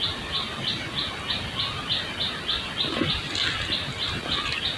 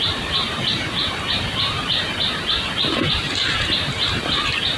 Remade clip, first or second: second